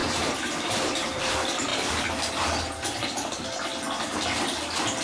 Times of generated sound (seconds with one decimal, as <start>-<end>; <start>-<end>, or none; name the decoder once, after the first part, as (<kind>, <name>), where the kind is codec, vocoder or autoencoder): 0.0-1.2 (vocoder, BigVGAN v2)